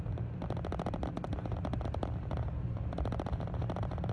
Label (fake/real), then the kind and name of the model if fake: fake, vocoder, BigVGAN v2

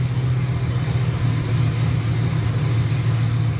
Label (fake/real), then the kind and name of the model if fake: real